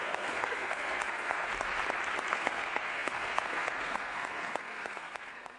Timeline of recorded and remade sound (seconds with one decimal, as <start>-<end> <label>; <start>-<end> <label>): 0.0-1.5 remade; 1.5-2.3 recorded; 2.3-5.6 remade

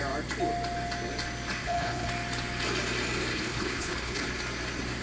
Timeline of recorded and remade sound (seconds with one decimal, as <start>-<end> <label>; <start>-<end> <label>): 0.0-1.6 recorded; 1.6-2.1 remade; 2.1-3.3 recorded; 3.3-4.3 remade; 4.3-5.0 recorded